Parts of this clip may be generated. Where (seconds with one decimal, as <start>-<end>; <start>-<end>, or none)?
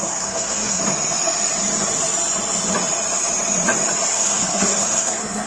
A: 0.0-0.8; 4.1-5.5